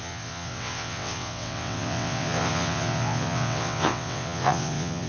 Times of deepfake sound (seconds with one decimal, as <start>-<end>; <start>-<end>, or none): 0.0-5.1